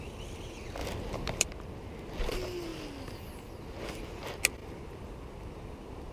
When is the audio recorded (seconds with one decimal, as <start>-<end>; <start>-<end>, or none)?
0.0-4.6